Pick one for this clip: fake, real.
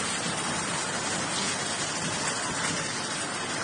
real